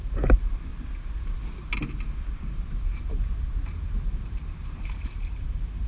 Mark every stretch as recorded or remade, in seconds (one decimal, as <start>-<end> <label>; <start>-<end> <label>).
0.0-0.7 remade; 0.7-2.3 recorded; 2.3-5.9 remade